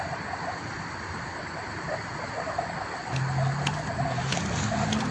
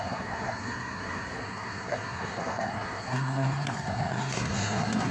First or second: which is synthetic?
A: second